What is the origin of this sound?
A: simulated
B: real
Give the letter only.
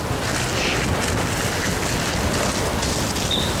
B